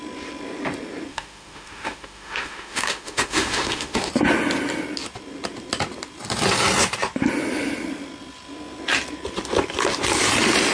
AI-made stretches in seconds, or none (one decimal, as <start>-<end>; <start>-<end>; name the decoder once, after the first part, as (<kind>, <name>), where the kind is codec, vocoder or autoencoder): 1.1-4.1 (autoencoder, DAC-VAE)